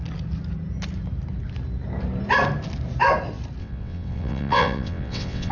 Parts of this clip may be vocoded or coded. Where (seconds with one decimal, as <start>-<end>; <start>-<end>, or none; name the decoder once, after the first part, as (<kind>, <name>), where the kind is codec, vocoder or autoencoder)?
3.6-5.5 (vocoder, WaveNeXt)